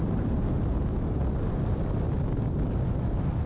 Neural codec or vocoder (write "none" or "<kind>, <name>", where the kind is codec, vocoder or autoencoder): none